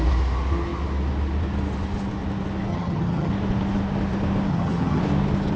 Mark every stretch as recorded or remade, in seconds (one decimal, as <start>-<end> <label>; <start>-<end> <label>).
0.0-2.7 recorded; 2.7-3.3 remade; 3.3-4.5 recorded; 4.5-5.0 remade; 5.0-5.6 recorded